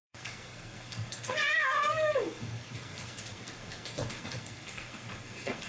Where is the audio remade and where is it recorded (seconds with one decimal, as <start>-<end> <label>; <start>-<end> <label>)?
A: 0.0-5.7 remade